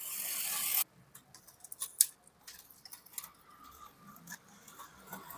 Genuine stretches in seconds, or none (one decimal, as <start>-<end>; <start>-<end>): 0.7-3.6